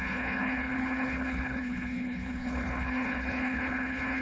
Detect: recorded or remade remade